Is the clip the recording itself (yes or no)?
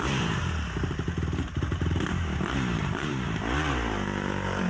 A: no